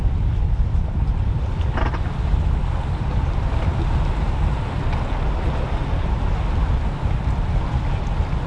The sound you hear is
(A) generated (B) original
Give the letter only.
B